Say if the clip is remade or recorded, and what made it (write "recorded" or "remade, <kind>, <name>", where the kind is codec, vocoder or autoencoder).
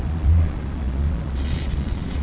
remade, vocoder, Vocos